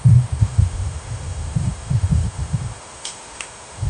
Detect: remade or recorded remade